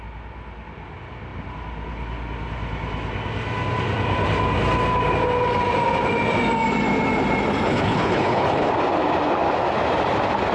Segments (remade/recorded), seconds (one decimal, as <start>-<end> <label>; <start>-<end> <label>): 0.0-7.7 recorded; 7.7-8.7 remade; 8.7-10.5 recorded